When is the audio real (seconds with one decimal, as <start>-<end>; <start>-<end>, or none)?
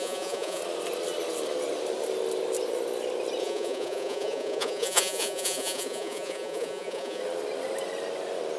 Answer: 0.6-3.4; 7.2-8.6